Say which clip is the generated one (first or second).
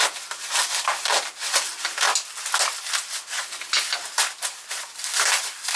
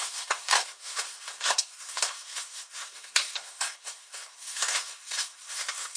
second